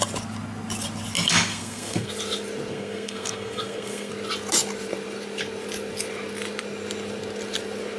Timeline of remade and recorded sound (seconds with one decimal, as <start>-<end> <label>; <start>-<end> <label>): 0.0-1.5 recorded; 1.5-2.1 remade; 2.1-2.7 recorded; 2.7-4.1 remade; 4.1-8.0 recorded